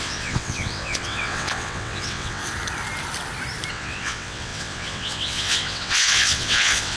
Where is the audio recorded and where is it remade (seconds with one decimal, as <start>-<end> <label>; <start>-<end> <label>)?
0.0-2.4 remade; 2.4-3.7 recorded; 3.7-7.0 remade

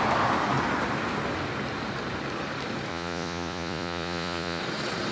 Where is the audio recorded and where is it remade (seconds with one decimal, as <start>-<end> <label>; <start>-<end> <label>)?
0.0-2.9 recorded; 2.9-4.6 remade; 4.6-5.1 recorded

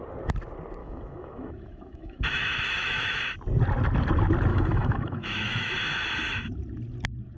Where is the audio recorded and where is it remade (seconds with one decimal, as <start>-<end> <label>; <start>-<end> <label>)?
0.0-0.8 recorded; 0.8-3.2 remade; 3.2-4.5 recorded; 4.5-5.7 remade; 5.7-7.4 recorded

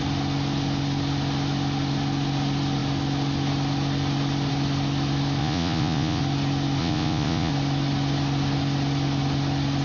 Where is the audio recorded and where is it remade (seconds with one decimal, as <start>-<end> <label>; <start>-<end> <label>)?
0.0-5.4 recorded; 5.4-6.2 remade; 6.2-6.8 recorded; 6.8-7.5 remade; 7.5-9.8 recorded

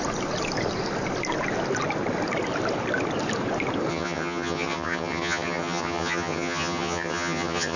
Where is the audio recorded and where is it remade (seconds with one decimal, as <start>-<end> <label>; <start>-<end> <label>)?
0.0-3.9 recorded; 3.9-7.8 remade

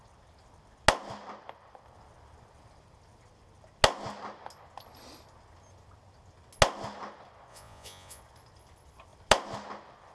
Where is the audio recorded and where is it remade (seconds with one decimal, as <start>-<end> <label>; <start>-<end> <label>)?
0.0-7.5 recorded; 7.5-8.2 remade; 8.2-10.1 recorded

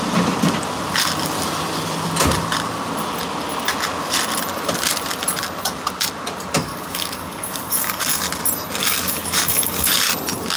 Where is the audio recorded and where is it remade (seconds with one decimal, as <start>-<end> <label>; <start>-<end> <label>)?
0.0-6.6 recorded; 6.6-8.2 remade; 8.2-8.8 recorded; 8.8-9.9 remade; 9.9-10.6 recorded